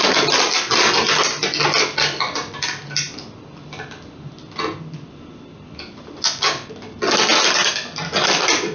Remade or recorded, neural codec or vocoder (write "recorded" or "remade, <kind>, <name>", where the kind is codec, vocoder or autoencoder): recorded